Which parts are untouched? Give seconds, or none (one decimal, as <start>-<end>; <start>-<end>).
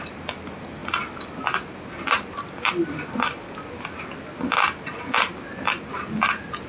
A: 0.0-6.7